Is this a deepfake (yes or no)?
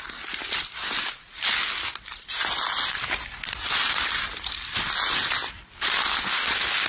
no